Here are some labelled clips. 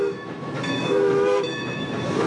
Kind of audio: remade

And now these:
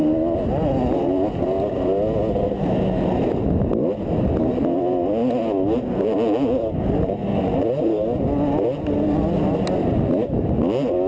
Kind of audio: recorded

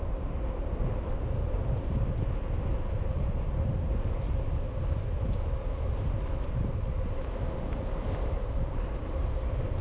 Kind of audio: recorded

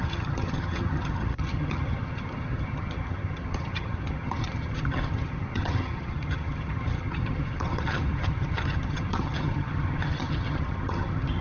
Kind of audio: remade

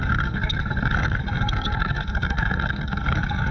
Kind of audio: remade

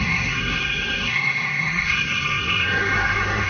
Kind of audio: remade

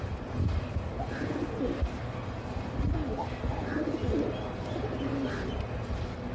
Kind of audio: recorded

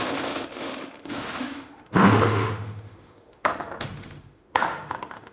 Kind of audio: remade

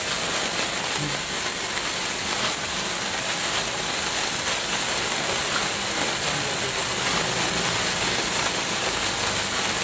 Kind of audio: recorded